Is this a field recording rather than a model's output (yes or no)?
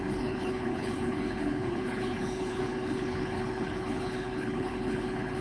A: no